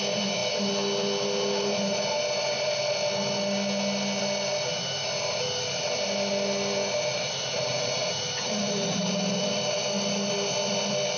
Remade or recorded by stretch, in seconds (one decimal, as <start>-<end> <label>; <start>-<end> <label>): 0.0-7.1 recorded; 7.1-9.5 remade; 9.5-11.2 recorded